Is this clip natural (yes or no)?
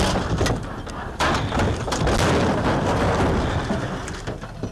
yes